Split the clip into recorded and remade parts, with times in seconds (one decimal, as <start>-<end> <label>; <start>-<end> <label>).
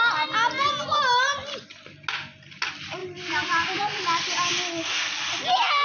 0.0-3.0 recorded; 3.0-4.0 remade; 4.0-5.8 recorded